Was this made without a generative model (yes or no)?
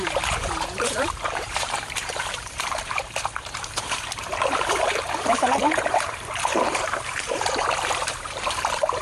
no